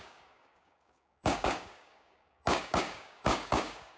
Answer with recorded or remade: remade